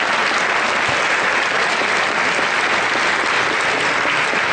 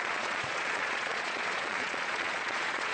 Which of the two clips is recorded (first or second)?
first